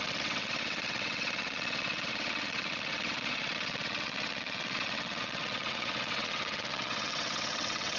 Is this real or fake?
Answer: fake